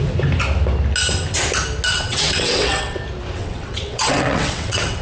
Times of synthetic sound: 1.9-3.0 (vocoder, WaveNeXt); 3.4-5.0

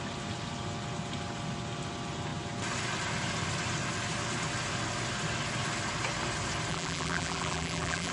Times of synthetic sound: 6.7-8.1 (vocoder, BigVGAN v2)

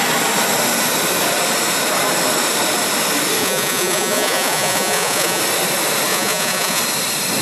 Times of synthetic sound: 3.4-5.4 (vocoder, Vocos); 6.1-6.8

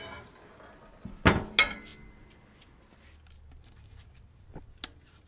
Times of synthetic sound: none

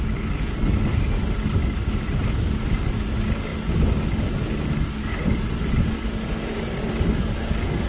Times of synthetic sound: none